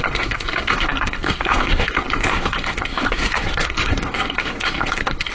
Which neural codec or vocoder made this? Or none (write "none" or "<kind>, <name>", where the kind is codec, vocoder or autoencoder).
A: codec, SNAC